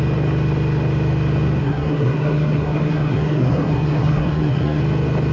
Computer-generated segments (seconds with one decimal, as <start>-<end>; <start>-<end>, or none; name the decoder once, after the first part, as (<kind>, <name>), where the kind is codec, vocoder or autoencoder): 1.6-4.8 (codec, SNAC)